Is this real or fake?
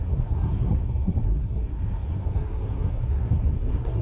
fake